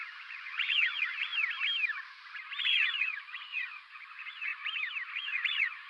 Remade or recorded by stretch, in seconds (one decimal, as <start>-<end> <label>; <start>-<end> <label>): 0.0-1.3 remade; 1.3-2.6 recorded; 2.6-4.5 remade; 4.5-5.1 recorded; 5.1-5.9 remade